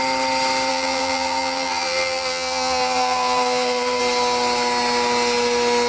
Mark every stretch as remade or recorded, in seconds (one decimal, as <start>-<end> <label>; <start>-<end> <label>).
0.0-0.7 recorded; 0.7-4.0 remade; 4.0-5.9 recorded